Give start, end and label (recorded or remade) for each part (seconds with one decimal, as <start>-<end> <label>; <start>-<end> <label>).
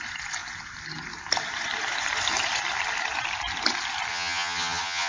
0.0-4.1 recorded; 4.1-5.1 remade